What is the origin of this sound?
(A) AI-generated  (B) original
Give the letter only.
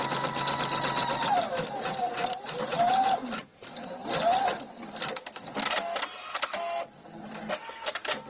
B